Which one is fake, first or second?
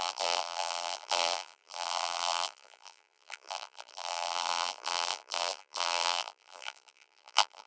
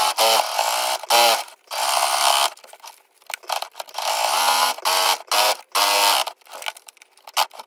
first